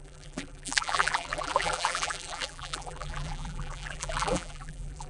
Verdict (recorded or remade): remade